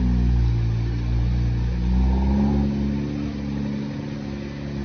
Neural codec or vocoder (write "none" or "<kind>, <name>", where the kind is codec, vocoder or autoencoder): none